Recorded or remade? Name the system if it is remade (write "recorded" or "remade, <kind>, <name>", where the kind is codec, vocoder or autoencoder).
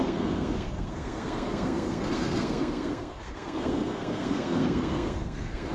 remade, codec, SNAC